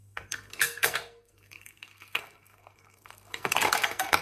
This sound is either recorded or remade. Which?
remade